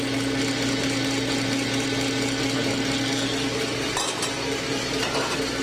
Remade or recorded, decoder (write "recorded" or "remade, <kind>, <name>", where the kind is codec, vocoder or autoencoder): recorded